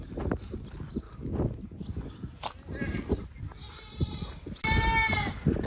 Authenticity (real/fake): real